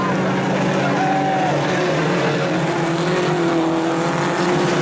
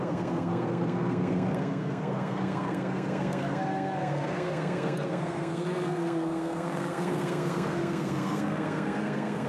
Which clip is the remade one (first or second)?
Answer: second